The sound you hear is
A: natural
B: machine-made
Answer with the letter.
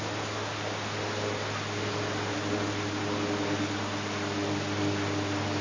A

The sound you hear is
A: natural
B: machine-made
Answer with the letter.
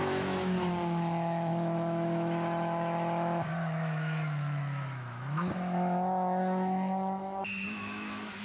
B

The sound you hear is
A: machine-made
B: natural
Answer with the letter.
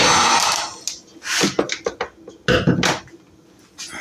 B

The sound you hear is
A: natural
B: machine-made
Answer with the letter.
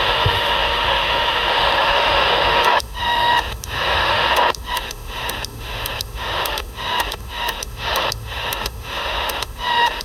B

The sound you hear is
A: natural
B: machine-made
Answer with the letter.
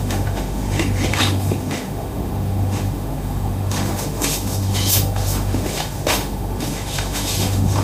B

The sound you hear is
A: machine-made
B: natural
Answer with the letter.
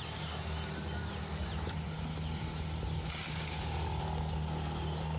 B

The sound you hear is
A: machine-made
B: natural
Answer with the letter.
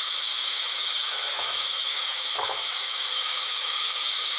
A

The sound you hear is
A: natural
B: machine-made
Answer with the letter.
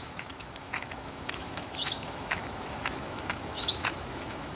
B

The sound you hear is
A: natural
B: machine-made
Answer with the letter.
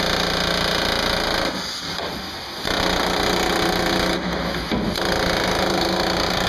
A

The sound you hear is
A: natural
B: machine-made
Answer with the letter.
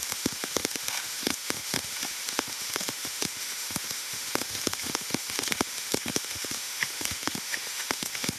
B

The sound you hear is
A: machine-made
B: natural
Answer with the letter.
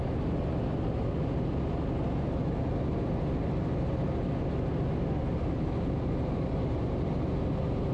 B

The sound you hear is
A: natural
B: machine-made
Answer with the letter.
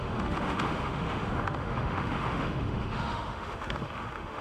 B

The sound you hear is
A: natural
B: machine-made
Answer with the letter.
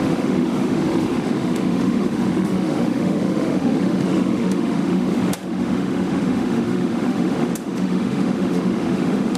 B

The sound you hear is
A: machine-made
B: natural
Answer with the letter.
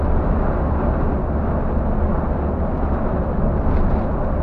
B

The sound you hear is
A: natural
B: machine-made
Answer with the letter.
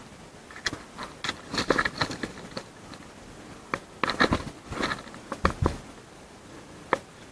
A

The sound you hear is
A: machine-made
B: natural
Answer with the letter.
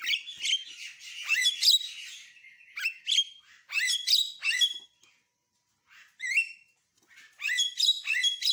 B